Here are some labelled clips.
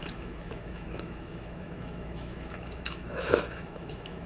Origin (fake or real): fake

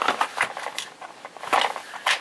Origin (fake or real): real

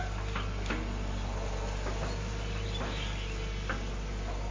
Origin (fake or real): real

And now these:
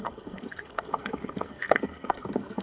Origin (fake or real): fake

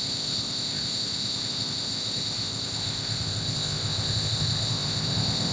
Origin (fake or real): fake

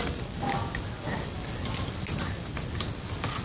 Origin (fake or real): real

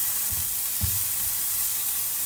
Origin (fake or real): real